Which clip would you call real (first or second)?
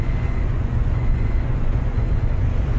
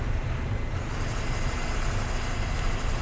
second